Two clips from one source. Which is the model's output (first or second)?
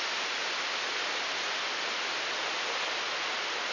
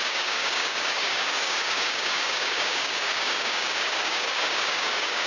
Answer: second